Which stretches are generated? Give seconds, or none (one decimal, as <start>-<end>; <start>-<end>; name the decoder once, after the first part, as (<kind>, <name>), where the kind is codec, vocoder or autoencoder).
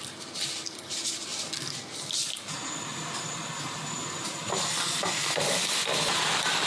2.9-5.2 (vocoder, BigVGAN v2)